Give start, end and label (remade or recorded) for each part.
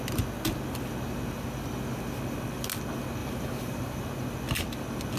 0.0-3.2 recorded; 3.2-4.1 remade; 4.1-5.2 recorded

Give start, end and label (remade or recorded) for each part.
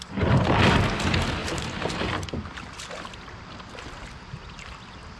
0.0-1.4 recorded; 1.4-4.5 remade; 4.5-5.2 recorded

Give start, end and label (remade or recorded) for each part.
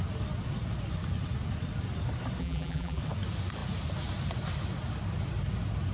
0.0-2.4 recorded; 2.4-3.0 remade; 3.0-5.9 recorded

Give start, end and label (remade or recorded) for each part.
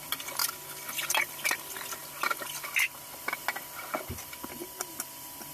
0.0-5.5 remade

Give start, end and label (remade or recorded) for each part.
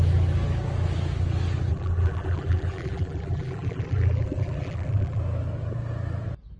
0.0-1.7 recorded; 1.7-5.2 remade; 5.2-6.6 recorded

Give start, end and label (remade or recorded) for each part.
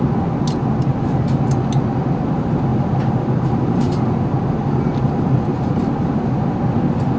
0.0-2.7 recorded; 2.7-3.5 remade; 3.5-4.6 recorded; 4.6-5.9 remade; 5.9-7.2 recorded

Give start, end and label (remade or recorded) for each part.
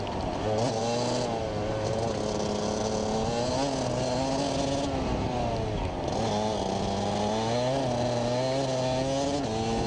0.0-9.9 recorded